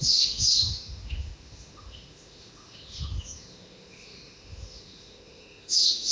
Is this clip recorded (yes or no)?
no